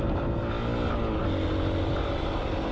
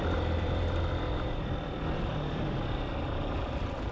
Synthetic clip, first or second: second